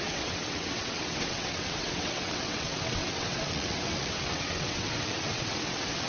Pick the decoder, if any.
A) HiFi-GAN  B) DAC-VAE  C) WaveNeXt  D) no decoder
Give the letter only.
C